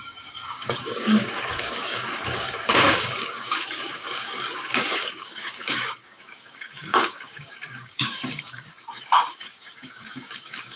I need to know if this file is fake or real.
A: fake